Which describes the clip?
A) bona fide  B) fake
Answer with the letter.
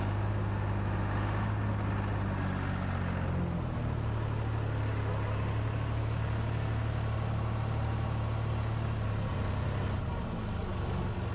A